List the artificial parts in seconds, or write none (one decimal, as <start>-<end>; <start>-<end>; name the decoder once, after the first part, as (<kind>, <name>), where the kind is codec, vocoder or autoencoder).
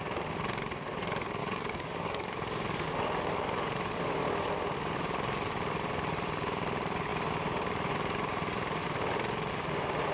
1.4-4.5 (codec, DAC)